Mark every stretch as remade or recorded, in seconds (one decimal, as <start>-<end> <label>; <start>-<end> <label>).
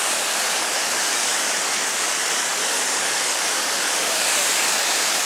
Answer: 0.0-5.3 remade